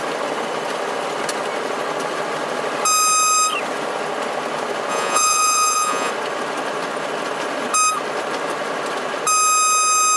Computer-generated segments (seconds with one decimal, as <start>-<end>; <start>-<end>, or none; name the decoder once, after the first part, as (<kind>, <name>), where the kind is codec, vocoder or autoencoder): 4.9-6.1 (vocoder, Vocos)